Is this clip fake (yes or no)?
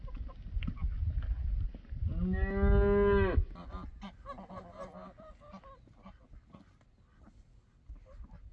no